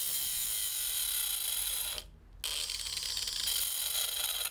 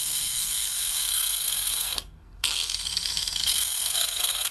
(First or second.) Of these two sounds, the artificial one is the second